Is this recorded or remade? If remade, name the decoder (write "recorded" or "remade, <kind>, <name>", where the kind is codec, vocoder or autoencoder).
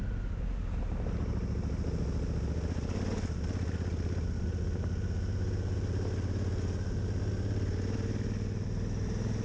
recorded